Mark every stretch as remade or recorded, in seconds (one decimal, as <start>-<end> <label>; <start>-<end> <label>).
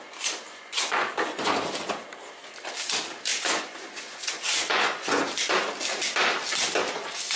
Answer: 0.0-0.5 recorded; 0.5-1.5 remade; 1.5-3.3 recorded; 3.3-5.2 remade; 5.2-7.4 recorded